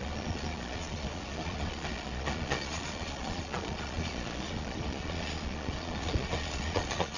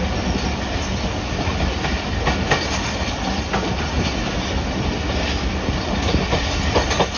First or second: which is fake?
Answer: first